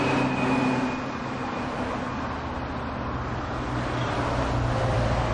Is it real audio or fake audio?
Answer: real